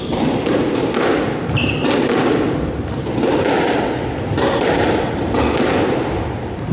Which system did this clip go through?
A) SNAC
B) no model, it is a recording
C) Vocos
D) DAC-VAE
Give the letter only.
B